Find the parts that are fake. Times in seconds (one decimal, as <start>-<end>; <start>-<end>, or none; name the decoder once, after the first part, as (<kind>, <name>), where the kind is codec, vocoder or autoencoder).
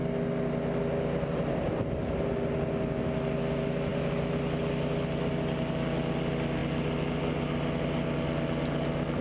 none